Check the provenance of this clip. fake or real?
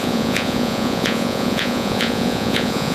fake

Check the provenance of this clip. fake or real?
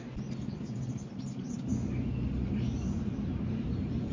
real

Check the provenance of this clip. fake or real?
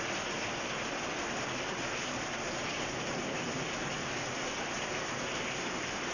real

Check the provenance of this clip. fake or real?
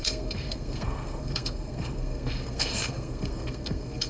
fake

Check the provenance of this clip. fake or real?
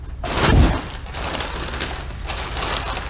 real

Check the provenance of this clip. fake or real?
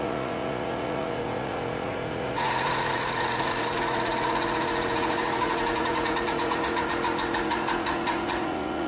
fake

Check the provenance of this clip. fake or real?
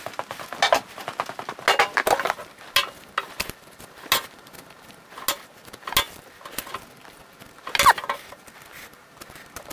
real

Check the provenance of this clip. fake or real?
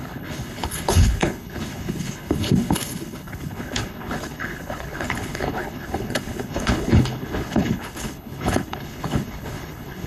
fake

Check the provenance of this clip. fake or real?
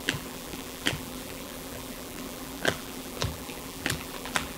fake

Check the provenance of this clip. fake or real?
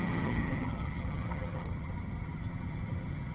fake